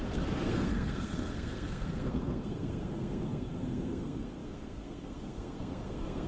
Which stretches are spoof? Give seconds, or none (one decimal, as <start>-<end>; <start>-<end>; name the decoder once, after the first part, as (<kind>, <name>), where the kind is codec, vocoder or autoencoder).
0.0-6.3 (codec, SNAC)